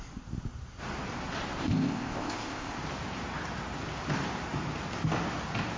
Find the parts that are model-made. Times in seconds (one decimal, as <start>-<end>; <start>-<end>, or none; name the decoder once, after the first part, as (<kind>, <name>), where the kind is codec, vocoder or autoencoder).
1.6-2.8 (codec, ZipCodec)